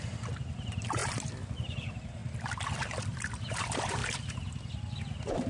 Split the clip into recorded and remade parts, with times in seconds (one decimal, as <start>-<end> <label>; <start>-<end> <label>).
0.0-1.0 remade; 1.0-1.5 recorded; 1.5-2.2 remade; 2.2-3.2 recorded; 3.2-4.0 remade; 4.0-5.5 recorded